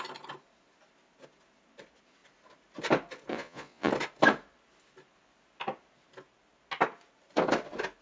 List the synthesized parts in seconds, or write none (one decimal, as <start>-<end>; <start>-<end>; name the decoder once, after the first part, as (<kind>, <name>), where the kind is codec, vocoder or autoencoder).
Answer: 3.3-3.9 (vocoder, Vocos)